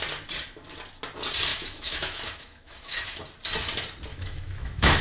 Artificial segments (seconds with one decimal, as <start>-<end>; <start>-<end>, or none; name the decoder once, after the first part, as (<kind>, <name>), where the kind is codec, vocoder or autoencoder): 1.5-3.2 (autoencoder, DAC-VAE); 4.1-5.0